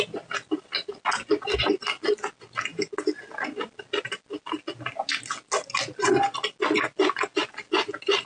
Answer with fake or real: real